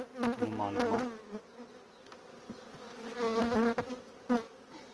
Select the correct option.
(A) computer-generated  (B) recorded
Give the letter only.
B